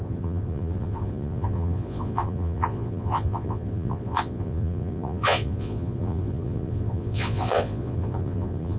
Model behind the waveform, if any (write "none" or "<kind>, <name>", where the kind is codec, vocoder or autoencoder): vocoder, Vocos